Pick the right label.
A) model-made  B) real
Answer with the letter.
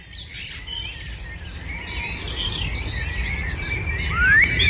B